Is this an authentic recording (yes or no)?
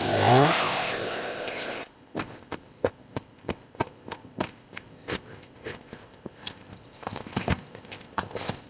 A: no